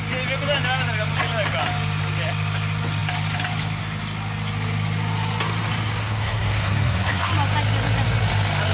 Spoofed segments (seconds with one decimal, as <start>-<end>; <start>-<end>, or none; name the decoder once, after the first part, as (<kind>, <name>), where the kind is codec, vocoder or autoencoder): 6.0-7.3 (codec, SNAC)